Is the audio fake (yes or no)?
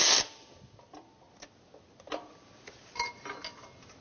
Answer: no